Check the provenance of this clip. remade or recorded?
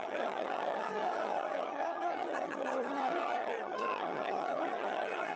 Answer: remade